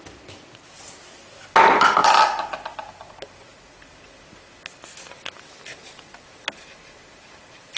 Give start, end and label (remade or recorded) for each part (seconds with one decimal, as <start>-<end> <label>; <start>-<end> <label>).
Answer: 0.0-7.8 recorded